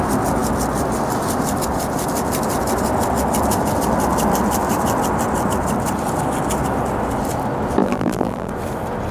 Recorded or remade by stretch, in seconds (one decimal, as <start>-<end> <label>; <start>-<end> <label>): 0.0-7.8 recorded; 7.8-8.5 remade; 8.5-9.1 recorded

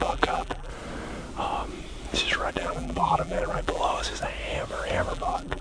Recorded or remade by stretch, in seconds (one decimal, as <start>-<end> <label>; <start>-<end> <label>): 0.0-0.7 remade; 0.7-2.5 recorded; 2.5-3.8 remade; 3.8-5.1 recorded; 5.1-5.6 remade

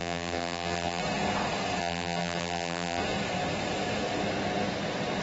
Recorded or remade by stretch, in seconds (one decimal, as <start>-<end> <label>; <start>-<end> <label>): 0.0-1.0 remade; 1.0-1.8 recorded; 1.8-3.0 remade; 3.0-5.2 recorded

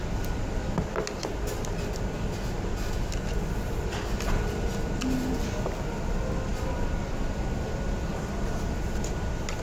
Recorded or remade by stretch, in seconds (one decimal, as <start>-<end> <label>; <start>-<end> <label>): 0.0-9.6 recorded